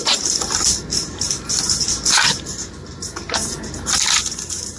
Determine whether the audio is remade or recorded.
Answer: recorded